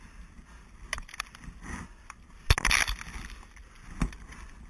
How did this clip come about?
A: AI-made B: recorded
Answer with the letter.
B